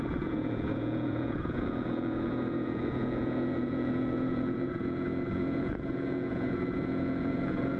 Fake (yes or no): yes